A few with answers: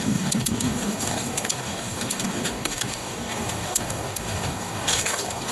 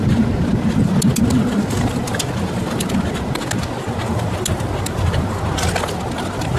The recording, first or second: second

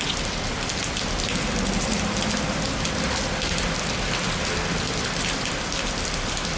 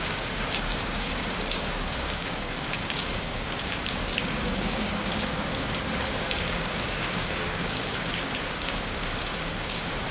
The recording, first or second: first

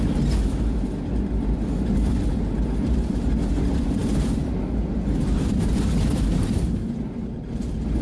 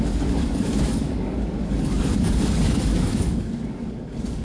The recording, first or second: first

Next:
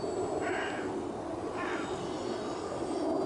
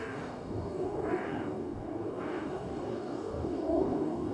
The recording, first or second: first